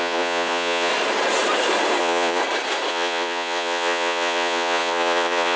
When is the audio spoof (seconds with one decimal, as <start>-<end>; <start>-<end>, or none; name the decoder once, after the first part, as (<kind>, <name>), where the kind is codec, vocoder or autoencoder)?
0.0-0.9 (vocoder, Vocos); 2.0-2.4; 2.9-5.6